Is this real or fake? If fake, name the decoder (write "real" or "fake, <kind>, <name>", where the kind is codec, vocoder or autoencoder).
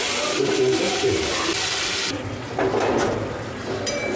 real